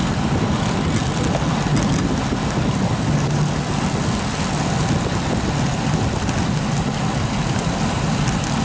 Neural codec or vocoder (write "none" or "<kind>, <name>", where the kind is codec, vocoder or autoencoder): none